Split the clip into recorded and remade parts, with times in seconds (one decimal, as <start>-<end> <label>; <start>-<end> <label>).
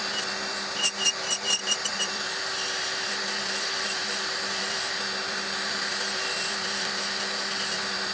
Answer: 0.0-8.1 remade